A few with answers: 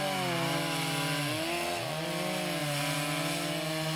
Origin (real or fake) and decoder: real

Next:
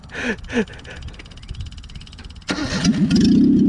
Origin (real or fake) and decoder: real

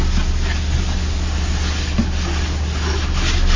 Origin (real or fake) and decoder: real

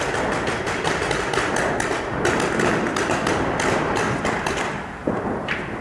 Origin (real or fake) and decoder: real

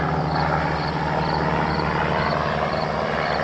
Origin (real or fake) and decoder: real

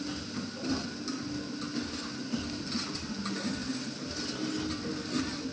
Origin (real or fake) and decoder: real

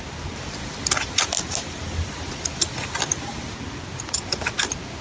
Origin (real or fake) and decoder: real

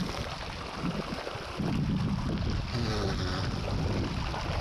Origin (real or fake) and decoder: real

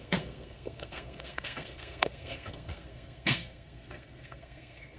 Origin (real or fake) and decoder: fake, codec, SNAC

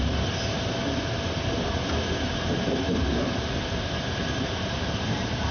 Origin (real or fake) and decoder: real